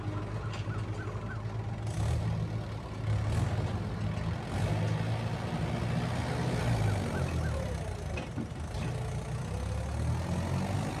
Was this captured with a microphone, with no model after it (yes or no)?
yes